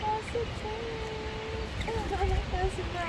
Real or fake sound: real